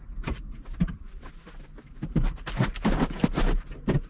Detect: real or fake real